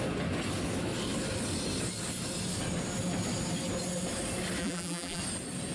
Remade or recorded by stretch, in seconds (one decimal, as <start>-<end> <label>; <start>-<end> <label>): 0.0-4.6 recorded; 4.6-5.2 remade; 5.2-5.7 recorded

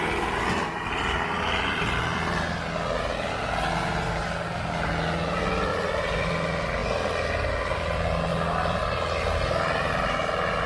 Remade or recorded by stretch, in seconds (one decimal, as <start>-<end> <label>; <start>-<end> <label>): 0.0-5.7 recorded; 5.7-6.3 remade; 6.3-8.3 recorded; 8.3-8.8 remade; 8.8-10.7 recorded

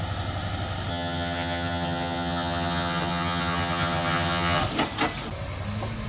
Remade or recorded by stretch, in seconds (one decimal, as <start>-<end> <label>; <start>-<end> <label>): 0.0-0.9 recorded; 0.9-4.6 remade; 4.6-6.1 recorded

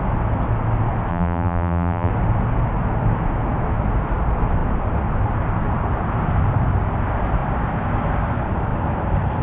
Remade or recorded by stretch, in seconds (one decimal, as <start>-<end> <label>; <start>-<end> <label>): 0.0-1.1 recorded; 1.1-2.1 remade; 2.1-9.4 recorded

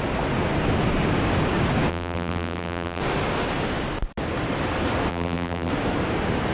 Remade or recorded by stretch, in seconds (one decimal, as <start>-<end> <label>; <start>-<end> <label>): 0.0-1.9 recorded; 1.9-3.0 remade; 3.0-5.1 recorded; 5.1-5.7 remade; 5.7-6.5 recorded

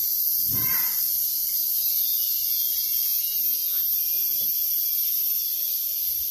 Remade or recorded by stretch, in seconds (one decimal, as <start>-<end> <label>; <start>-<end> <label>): 0.0-3.2 remade; 3.2-5.4 recorded; 5.4-6.3 remade

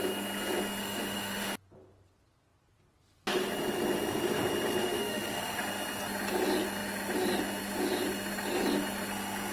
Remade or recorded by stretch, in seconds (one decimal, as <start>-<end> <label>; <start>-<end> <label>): 0.0-0.8 recorded; 0.8-1.5 remade; 1.5-4.8 recorded; 4.8-5.6 remade; 5.6-9.5 recorded